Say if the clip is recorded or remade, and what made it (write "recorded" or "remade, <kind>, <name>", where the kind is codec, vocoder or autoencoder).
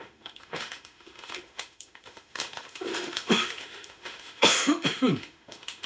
remade, autoencoder, DAC-VAE